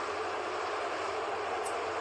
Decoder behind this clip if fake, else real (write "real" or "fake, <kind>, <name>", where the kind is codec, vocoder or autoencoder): real